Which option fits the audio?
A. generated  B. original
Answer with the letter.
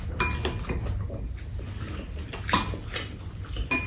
B